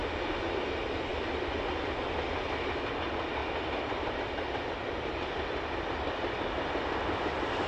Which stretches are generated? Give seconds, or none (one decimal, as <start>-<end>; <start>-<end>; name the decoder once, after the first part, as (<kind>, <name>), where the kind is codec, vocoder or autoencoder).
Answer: 3.4-4.1 (vocoder, BigVGAN v2)